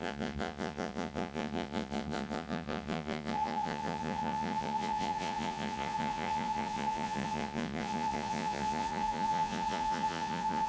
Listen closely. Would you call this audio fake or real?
fake